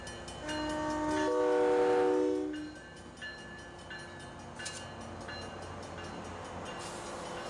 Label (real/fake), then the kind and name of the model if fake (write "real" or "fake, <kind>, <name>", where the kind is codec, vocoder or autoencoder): real